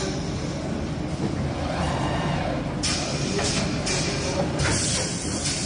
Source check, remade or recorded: recorded